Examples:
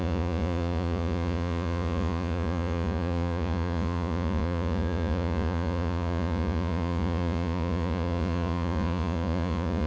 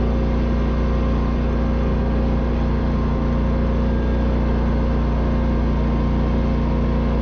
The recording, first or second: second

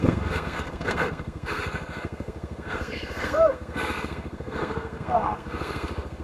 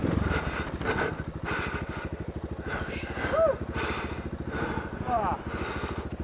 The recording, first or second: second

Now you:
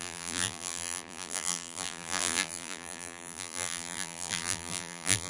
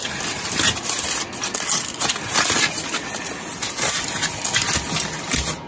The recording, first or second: second